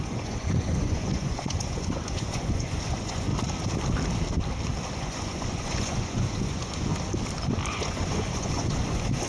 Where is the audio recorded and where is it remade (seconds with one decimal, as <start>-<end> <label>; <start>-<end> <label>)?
0.0-3.3 remade; 3.3-5.0 recorded; 5.0-6.9 remade; 6.9-7.7 recorded; 7.7-9.3 remade